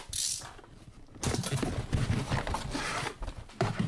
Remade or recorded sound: recorded